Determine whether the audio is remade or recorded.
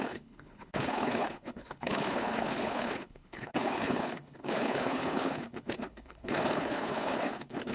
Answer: remade